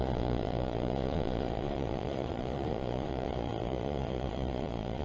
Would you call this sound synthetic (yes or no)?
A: yes